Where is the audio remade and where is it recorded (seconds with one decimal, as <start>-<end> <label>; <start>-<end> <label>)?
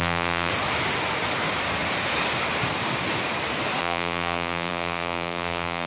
0.0-0.5 remade; 0.5-3.8 recorded; 3.8-5.9 remade